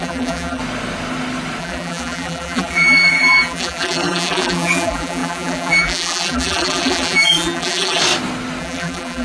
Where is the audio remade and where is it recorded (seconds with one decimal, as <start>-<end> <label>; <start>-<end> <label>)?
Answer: 0.0-0.6 remade; 0.6-1.6 recorded; 1.6-8.0 remade; 8.0-8.6 recorded; 8.6-9.2 remade